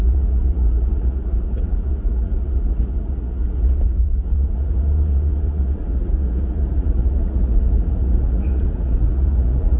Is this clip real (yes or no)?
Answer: no